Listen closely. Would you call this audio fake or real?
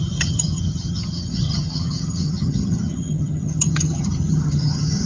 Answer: fake